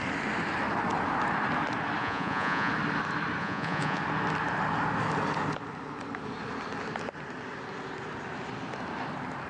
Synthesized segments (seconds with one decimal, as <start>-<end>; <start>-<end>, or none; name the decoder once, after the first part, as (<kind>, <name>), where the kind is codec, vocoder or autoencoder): 2.0-2.7 (vocoder, Vocos); 3.4-4.0